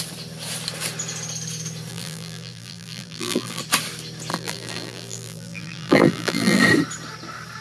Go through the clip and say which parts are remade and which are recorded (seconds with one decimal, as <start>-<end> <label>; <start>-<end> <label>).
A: 0.0-1.9 recorded; 1.9-3.6 remade; 3.6-4.3 recorded; 4.3-6.6 remade; 6.6-7.6 recorded